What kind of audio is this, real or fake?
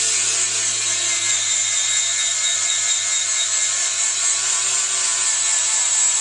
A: real